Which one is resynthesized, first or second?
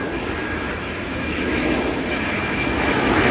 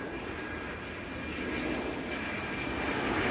first